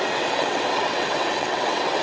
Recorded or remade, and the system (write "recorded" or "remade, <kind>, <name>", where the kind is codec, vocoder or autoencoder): remade, vocoder, WaveNeXt